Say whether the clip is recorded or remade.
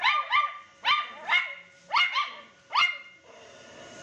recorded